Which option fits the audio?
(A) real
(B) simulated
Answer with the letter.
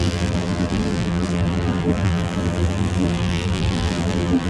B